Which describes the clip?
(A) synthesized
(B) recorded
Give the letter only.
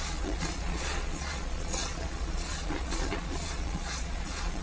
A